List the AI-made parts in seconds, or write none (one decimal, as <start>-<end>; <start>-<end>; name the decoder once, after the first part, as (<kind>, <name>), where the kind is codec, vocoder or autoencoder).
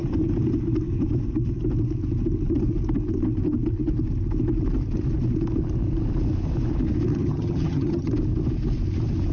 7.1-8.1 (vocoder, HiFi-GAN)